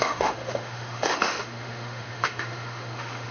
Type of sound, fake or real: fake